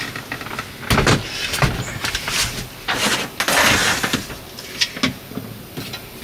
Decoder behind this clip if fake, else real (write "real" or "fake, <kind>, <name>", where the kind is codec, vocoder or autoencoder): real